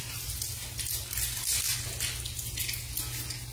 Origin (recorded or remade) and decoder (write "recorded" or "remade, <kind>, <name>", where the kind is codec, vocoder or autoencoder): recorded